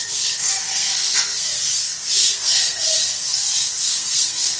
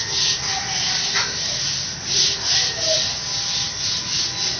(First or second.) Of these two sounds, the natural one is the second